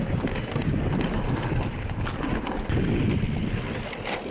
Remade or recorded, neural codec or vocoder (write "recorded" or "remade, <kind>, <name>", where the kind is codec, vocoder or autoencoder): recorded